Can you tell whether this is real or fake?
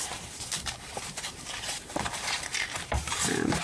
fake